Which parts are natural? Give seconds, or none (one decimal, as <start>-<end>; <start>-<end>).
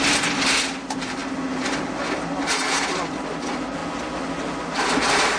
0.0-5.4